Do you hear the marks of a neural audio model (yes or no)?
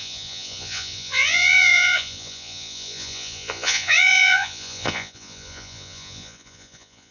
yes